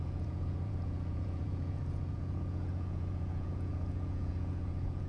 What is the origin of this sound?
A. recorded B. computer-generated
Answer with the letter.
B